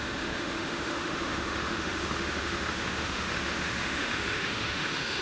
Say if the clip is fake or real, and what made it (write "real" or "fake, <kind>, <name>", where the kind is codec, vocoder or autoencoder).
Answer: fake, autoencoder, DAC-VAE